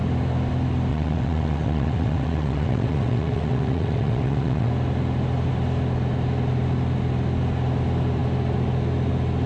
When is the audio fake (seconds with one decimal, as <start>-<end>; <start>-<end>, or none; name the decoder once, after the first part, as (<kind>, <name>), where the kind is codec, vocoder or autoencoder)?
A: 0.9-4.7 (vocoder, WaveNeXt)

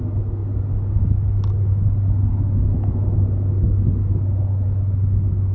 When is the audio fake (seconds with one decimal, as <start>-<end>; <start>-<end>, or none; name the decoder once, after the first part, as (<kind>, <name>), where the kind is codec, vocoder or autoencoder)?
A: none

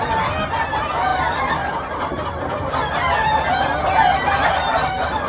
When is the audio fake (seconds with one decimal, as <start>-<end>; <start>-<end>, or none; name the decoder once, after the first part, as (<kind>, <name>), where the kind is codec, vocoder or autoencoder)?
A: none

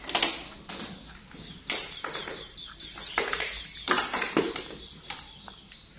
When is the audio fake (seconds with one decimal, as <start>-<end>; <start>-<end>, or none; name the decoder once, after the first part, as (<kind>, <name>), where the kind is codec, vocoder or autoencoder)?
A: none

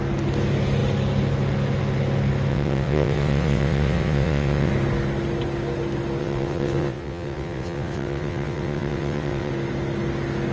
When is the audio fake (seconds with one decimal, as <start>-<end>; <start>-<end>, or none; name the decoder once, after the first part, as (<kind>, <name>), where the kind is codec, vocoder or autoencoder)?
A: 2.5-4.7 (vocoder, WaveNeXt); 6.2-9.5